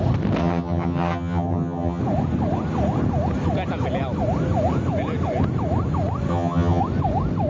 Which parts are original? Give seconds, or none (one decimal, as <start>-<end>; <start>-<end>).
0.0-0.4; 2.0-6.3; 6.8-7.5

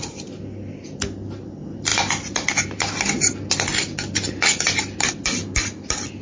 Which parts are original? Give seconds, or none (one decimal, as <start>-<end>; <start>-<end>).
0.0-6.2

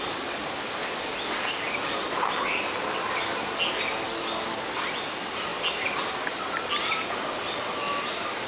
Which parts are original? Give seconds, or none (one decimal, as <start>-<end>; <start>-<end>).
0.0-8.5

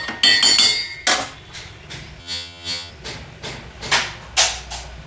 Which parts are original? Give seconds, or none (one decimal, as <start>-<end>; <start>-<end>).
0.0-2.2; 2.9-5.1

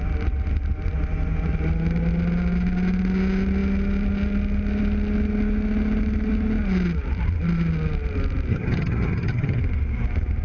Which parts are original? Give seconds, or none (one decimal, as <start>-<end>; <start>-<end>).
0.0-8.5; 9.6-10.4